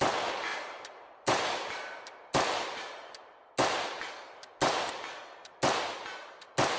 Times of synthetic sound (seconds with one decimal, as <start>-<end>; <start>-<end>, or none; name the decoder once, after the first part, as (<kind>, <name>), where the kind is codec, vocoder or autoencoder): 0.5-3.5 (vocoder, BigVGAN v2)